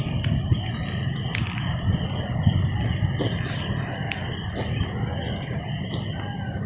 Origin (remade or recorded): recorded